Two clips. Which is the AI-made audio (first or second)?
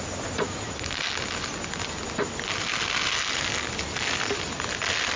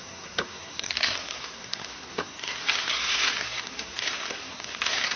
second